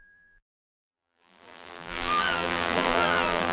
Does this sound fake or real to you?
fake